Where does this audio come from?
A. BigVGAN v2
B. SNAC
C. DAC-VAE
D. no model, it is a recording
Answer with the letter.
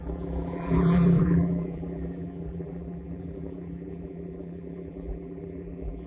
A